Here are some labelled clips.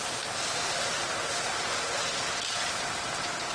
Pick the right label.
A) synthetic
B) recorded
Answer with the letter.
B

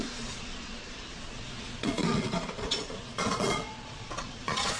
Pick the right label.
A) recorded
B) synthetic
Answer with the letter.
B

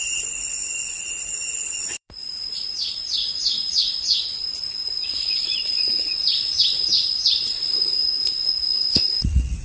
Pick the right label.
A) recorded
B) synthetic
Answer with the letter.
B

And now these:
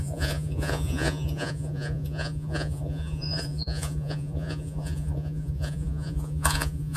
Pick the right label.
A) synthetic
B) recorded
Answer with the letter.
A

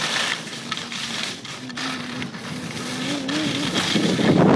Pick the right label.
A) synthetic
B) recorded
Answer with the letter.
B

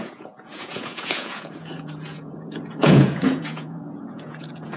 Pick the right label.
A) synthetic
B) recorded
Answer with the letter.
A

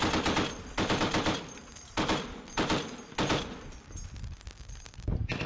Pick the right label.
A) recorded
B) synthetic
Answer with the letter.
A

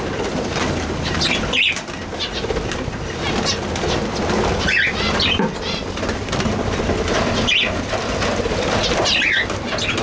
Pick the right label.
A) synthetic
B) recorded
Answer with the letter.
B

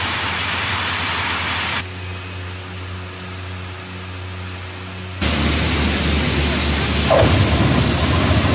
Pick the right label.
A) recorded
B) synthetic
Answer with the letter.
A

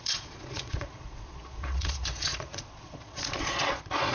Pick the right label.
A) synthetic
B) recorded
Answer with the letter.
A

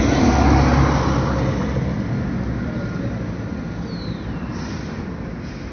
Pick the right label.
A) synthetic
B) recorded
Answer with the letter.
B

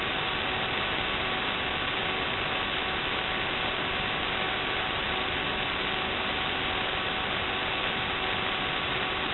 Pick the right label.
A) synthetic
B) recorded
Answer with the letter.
B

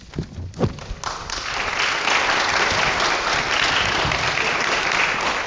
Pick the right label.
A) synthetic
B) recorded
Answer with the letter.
B